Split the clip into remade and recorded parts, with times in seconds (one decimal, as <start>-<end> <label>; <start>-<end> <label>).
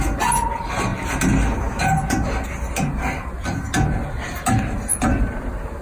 0.0-5.8 recorded